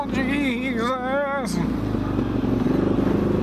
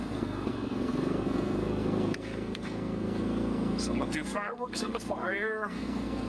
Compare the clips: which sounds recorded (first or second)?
first